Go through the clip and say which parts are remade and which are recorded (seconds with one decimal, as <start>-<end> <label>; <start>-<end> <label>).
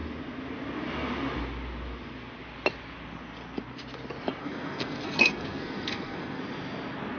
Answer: 0.0-4.4 recorded; 4.4-6.4 remade; 6.4-7.2 recorded